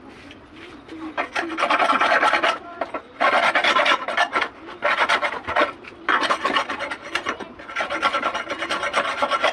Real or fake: real